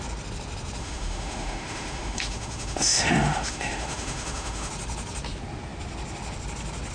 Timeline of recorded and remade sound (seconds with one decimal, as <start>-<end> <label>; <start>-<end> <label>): 0.0-0.8 recorded; 0.8-4.7 remade; 4.7-6.9 recorded